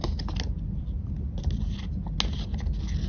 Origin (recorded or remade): recorded